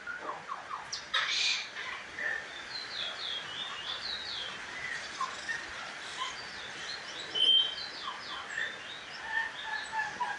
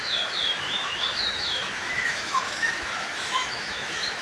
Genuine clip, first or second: first